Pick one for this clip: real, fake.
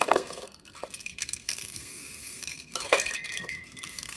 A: fake